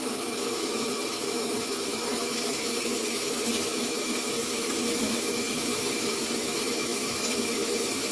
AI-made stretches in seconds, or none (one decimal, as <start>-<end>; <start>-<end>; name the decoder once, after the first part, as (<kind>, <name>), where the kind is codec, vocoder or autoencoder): 0.0-8.1 (autoencoder, DAC-VAE)